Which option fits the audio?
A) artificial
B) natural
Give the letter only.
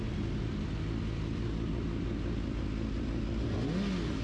B